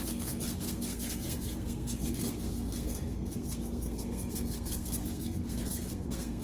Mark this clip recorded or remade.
remade